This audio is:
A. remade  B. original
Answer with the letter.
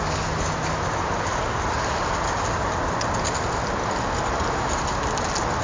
B